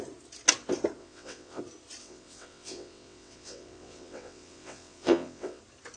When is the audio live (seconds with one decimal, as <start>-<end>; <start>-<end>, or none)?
0.0-1.0; 1.6-2.0; 5.6-6.0